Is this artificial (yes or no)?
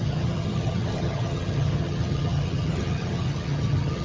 yes